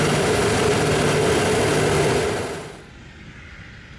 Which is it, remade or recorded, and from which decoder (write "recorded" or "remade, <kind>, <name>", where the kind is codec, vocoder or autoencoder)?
recorded